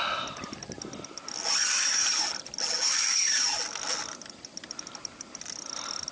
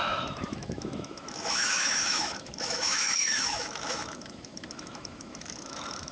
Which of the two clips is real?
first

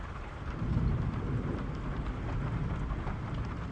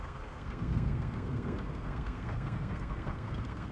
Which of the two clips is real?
first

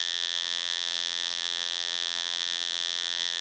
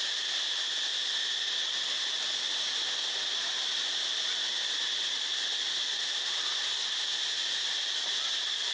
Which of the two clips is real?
second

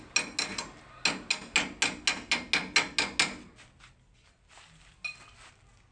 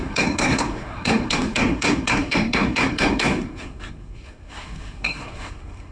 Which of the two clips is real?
first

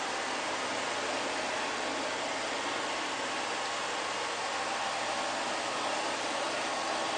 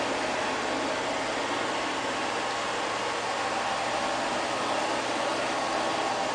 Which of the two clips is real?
second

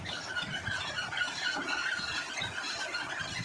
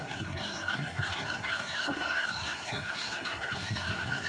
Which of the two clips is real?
first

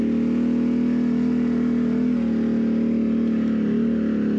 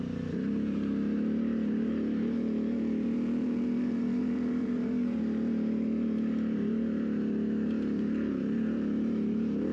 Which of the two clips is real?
first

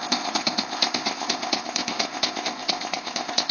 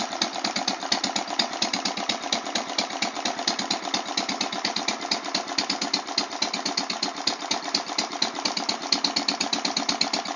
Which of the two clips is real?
second